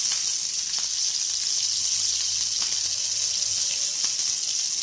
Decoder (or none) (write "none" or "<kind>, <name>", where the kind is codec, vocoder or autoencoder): none